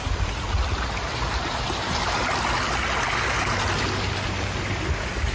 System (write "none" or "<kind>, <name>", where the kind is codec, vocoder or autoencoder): none